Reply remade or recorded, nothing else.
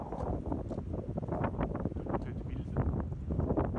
recorded